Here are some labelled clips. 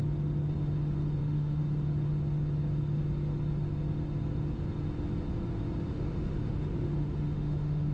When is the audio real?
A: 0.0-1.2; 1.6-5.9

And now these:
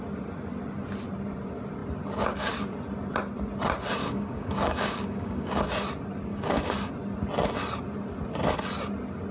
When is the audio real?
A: 0.0-4.0; 5.6-6.3; 6.9-9.3

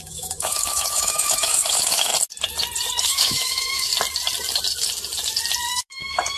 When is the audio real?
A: 2.1-3.0; 3.9-5.7

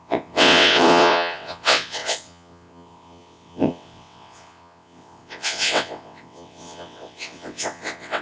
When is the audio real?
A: none